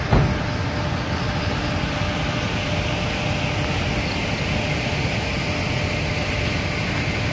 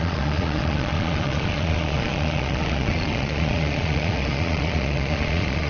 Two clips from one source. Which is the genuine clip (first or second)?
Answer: first